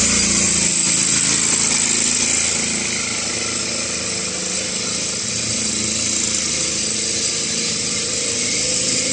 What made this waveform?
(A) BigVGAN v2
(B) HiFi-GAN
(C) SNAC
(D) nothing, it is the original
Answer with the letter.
D